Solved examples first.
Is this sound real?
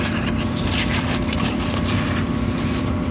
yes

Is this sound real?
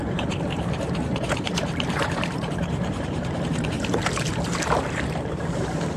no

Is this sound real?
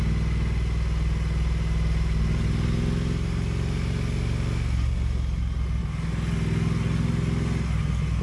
yes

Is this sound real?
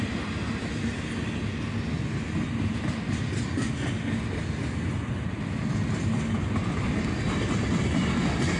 yes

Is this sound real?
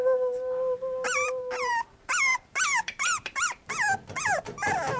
no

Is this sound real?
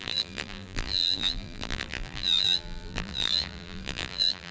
no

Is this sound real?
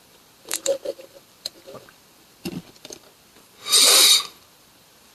no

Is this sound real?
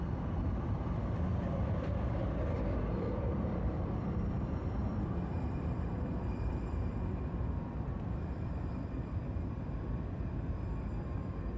no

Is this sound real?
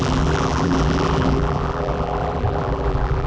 no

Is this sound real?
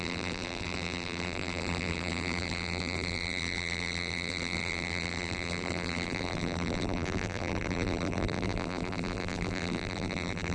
no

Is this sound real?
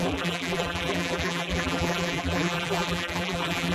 no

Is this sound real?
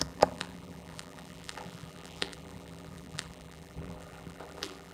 no